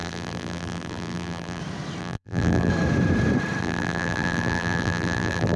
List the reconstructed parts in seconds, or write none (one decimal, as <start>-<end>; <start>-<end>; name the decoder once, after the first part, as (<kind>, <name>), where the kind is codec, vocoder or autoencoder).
0.0-1.6 (vocoder, BigVGAN v2); 2.0-2.7; 3.6-5.6